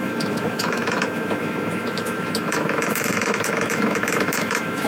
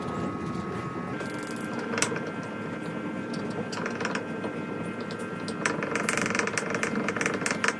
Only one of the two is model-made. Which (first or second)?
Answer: first